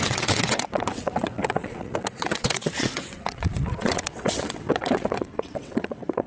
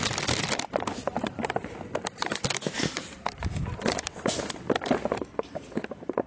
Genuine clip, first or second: second